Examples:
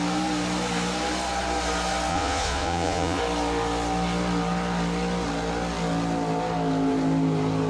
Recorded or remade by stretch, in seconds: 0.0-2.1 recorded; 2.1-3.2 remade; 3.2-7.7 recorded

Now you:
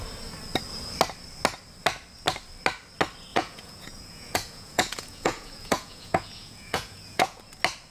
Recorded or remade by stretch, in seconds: 0.0-3.3 recorded; 3.3-7.4 remade; 7.4-7.9 recorded

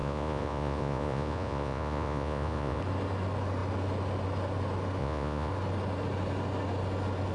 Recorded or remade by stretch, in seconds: 0.0-2.8 remade; 2.8-5.0 recorded; 5.0-5.5 remade; 5.5-7.3 recorded